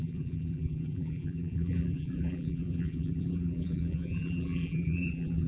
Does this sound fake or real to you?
fake